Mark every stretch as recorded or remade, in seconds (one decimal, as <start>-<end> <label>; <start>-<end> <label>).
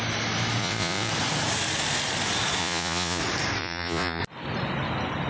0.0-0.6 recorded; 0.6-1.1 remade; 1.1-2.6 recorded; 2.6-3.2 remade; 3.2-3.6 recorded; 3.6-4.2 remade; 4.2-5.3 recorded